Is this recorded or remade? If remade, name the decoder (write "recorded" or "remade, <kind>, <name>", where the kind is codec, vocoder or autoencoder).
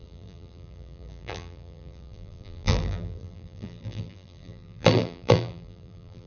remade, vocoder, BigVGAN v2